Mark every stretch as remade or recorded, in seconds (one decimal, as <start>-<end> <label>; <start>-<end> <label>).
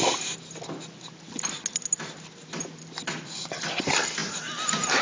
0.0-5.0 recorded